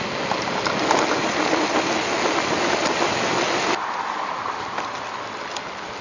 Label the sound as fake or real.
real